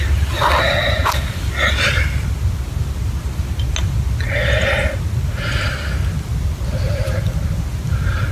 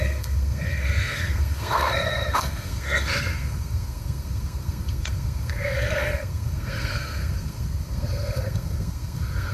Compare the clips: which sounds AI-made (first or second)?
second